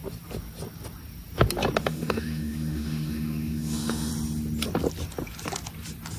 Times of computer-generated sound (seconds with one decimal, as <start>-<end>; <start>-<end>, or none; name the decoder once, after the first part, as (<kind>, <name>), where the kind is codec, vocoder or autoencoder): 1.8-4.1 (autoencoder, DAC-VAE)